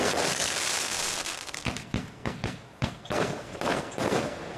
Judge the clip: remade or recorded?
remade